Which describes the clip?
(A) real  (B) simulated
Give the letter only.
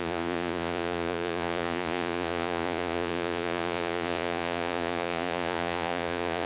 B